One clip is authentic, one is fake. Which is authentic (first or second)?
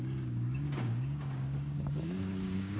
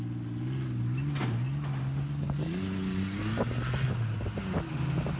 second